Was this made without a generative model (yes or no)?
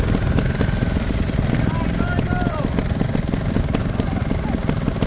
yes